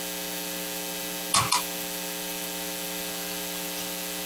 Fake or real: real